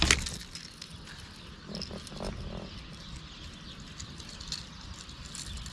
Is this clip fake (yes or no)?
no